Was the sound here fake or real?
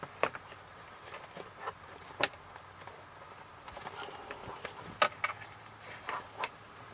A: real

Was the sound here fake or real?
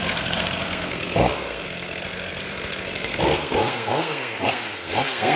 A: fake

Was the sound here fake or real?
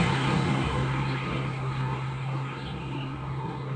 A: fake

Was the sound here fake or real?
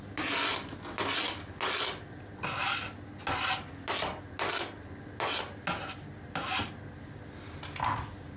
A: real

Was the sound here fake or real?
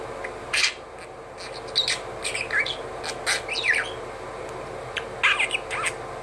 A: real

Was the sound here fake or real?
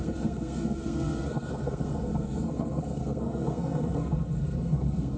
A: fake